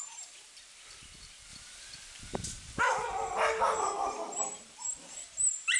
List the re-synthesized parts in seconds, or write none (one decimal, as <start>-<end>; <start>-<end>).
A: none